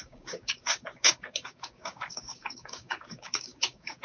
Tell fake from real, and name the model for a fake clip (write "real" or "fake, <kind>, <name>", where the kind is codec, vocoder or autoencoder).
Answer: fake, codec, DAC